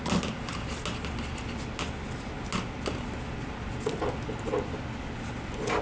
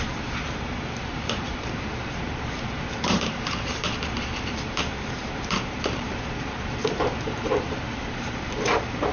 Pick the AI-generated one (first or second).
second